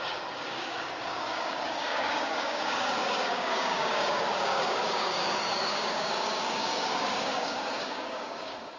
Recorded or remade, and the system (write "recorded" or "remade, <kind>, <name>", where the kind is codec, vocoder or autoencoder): remade, codec, DAC